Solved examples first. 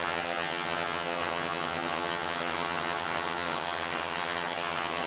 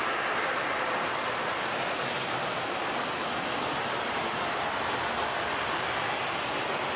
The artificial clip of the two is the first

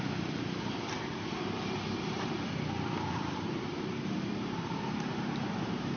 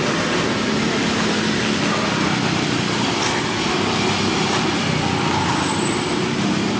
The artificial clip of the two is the first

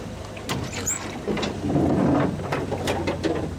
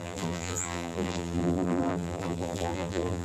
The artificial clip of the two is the second